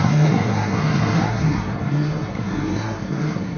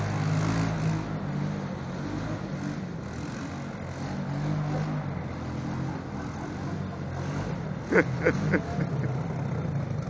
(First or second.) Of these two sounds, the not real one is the first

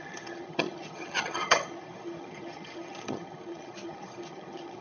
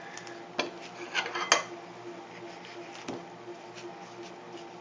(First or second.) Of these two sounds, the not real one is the first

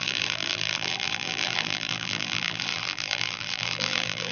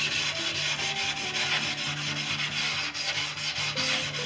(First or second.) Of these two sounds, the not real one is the first